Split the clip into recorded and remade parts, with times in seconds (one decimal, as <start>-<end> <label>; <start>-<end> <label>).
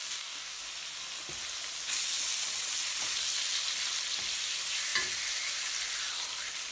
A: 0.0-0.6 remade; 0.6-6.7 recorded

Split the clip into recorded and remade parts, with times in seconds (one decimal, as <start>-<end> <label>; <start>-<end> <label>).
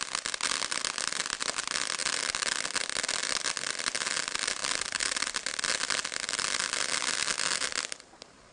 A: 0.0-8.5 recorded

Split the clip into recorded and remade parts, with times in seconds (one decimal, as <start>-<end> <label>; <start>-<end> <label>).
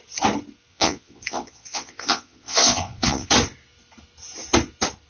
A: 0.0-0.7 recorded; 0.7-3.3 remade; 3.3-5.1 recorded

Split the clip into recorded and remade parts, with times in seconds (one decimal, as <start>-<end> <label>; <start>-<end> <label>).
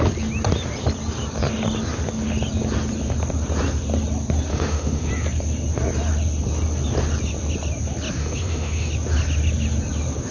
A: 0.0-4.5 recorded; 4.5-5.1 remade; 5.1-8.2 recorded; 8.2-8.9 remade; 8.9-10.3 recorded